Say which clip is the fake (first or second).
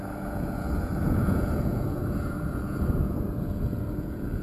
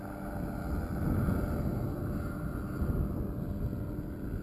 first